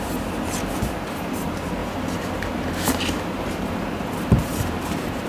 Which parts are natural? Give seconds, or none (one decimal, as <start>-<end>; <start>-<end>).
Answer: 0.0-1.8